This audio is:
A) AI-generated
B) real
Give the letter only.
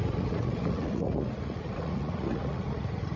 A